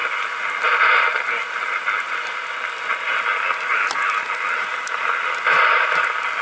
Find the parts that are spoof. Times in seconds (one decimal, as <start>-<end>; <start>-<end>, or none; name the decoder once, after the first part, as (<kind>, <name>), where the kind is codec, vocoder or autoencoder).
none